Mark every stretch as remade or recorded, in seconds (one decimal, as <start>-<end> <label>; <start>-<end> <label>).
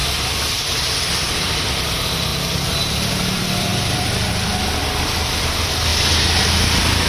0.0-1.0 recorded; 1.0-2.3 remade; 2.3-3.1 recorded; 3.1-5.9 remade; 5.9-7.1 recorded